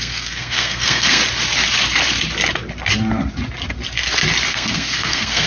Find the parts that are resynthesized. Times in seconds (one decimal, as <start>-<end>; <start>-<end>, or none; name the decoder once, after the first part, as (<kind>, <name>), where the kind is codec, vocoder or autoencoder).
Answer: 0.0-1.2 (codec, SNAC); 4.5-5.5